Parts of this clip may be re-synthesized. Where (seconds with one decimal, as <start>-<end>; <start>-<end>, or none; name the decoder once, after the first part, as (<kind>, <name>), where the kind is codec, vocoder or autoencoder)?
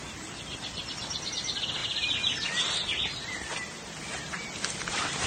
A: 1.8-5.3 (vocoder, BigVGAN v2)